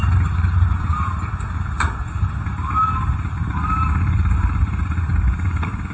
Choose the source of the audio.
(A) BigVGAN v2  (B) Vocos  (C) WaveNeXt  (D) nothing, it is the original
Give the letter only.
D